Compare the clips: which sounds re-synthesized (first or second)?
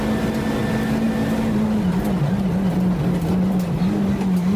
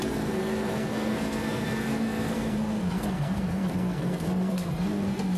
second